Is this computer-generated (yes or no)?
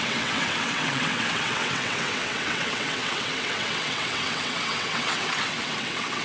yes